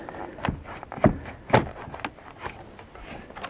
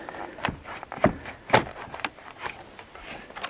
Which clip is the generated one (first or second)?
second